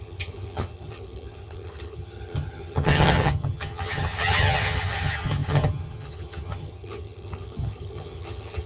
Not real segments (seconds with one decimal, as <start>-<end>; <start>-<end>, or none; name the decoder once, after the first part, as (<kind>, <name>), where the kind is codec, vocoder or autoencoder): 0.0-8.7 (vocoder, HiFi-GAN)